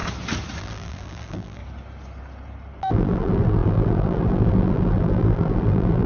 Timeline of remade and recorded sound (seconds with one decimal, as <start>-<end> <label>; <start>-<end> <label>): 0.0-0.6 recorded; 0.6-1.6 remade; 1.6-2.8 recorded; 2.8-6.1 remade